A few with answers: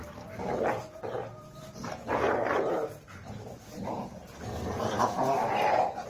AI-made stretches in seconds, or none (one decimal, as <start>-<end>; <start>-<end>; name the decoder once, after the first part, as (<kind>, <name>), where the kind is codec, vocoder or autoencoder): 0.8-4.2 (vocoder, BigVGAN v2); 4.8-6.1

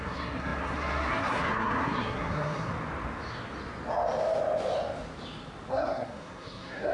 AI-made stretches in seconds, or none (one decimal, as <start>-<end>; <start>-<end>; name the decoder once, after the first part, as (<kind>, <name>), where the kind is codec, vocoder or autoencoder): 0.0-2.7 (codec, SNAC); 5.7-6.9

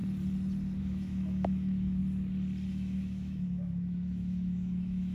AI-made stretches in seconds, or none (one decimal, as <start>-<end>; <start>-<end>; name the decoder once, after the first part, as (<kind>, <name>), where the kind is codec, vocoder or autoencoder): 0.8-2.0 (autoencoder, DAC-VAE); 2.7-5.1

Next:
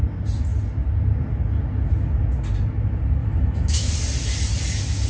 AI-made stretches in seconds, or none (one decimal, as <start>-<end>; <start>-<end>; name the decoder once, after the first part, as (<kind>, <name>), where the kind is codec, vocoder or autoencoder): 3.2-3.9 (autoencoder, DAC-VAE)